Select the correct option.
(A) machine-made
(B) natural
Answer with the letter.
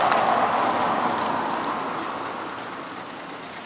B